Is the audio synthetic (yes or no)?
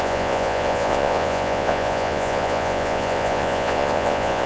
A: yes